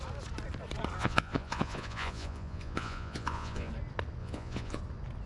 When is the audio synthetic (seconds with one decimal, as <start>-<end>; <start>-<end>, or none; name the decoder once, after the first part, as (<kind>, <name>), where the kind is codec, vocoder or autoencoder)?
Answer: 1.0-3.7 (vocoder, Vocos); 4.2-4.8

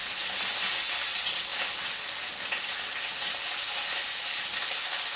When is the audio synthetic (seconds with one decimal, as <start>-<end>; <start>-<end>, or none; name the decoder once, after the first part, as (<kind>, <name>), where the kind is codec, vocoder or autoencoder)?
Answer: none

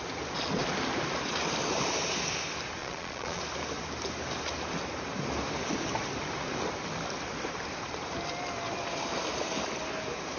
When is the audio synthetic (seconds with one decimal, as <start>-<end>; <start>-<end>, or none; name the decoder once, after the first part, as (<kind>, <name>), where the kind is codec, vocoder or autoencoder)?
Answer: 2.8-3.4 (vocoder, Vocos)